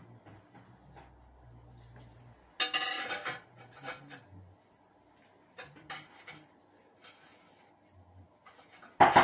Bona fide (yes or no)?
yes